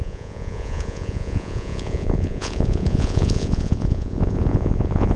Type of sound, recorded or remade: remade